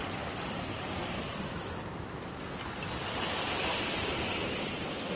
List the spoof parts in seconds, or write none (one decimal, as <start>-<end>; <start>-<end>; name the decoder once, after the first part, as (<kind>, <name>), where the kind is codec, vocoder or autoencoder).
none